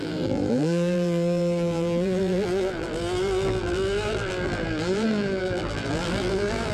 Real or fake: fake